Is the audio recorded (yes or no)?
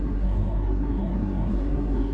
no